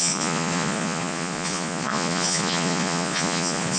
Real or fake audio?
fake